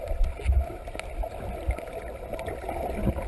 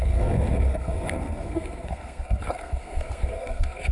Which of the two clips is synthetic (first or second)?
second